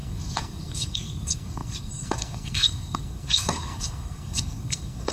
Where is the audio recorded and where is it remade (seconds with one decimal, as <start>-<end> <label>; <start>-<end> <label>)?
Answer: 0.0-5.1 remade